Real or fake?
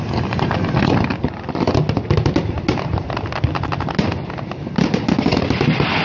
real